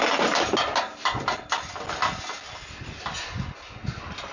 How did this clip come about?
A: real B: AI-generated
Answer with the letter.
A